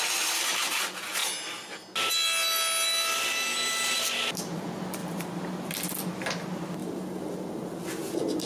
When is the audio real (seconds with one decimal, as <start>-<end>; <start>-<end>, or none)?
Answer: 0.0-5.0; 5.7-6.8; 7.3-8.5